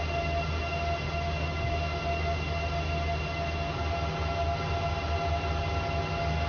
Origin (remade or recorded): recorded